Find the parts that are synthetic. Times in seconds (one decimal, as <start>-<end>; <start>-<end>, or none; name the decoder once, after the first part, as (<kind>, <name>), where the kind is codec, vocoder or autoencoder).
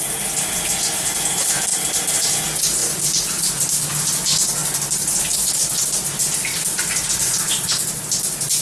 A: none